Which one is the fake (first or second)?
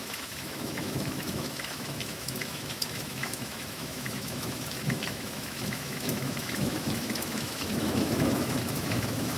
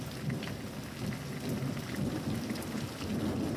first